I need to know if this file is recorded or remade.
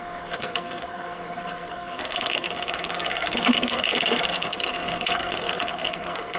remade